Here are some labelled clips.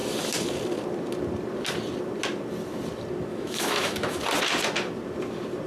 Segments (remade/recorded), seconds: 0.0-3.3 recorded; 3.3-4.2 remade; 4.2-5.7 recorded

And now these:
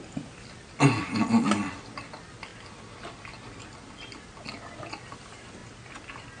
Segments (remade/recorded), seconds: 0.0-6.4 recorded

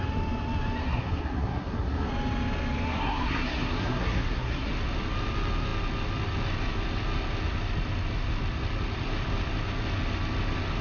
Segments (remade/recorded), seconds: 0.0-0.8 recorded; 0.8-2.1 remade; 2.1-2.9 recorded; 2.9-4.7 remade; 4.7-10.8 recorded

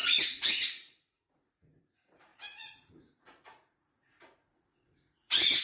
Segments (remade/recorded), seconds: 0.0-5.6 remade

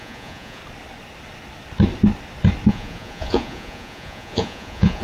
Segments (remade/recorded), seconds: 0.0-0.6 remade; 0.6-2.7 recorded; 2.7-5.0 remade